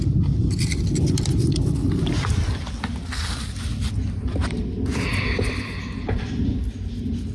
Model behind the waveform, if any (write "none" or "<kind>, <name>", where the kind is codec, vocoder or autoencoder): none